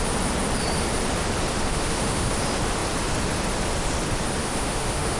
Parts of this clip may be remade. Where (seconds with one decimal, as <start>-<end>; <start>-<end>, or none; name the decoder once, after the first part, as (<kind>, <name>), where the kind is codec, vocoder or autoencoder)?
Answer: 1.5-2.3 (autoencoder, DAC-VAE); 4.4-5.2